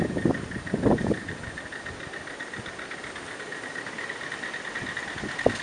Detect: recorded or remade recorded